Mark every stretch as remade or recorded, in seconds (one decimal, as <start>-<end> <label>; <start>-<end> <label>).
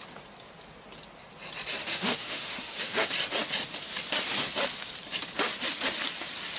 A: 0.0-1.8 recorded; 1.8-3.1 remade; 3.1-6.6 recorded